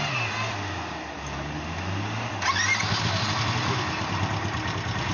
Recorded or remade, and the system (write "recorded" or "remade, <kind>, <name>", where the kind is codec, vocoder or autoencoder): recorded